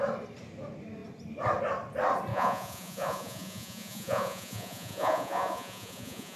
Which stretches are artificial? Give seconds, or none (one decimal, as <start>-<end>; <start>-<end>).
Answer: 2.3-6.4